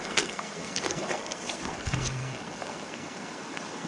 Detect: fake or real fake